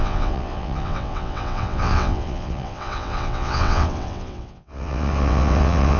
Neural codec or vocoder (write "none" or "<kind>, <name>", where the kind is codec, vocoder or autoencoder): vocoder, WaveNeXt